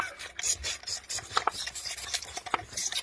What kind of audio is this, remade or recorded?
recorded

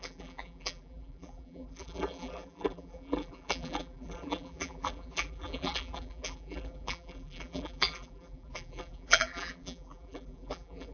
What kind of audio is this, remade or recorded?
remade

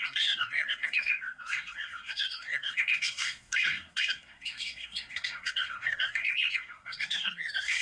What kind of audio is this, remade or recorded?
remade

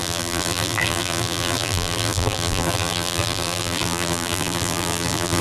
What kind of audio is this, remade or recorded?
remade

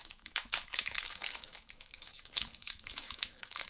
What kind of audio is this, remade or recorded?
remade